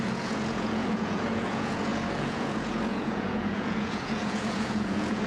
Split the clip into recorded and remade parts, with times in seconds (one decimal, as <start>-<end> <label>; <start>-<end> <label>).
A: 0.0-5.3 remade